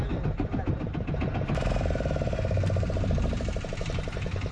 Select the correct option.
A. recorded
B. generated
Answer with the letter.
B